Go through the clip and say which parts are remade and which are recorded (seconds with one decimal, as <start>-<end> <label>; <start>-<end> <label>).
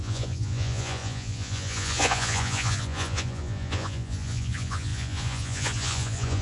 0.0-6.4 remade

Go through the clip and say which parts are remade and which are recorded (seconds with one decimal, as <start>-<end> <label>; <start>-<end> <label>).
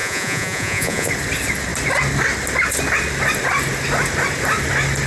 0.0-1.1 remade; 1.1-5.1 recorded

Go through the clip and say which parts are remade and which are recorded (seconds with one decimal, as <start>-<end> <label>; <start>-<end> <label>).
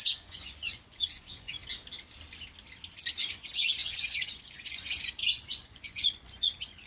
0.0-1.6 remade; 1.6-3.3 recorded; 3.3-6.9 remade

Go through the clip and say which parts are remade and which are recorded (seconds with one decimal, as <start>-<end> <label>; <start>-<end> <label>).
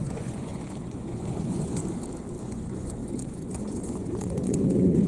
0.0-1.8 remade; 1.8-2.4 recorded; 2.4-5.1 remade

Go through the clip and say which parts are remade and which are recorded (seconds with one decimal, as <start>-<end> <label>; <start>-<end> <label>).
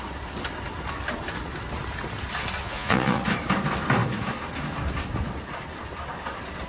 0.0-2.6 recorded; 2.6-3.2 remade; 3.2-6.7 recorded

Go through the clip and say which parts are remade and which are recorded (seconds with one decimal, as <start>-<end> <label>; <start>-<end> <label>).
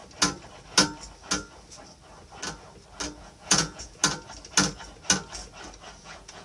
0.0-3.2 recorded; 3.2-4.0 remade; 4.0-6.0 recorded; 6.0-6.4 remade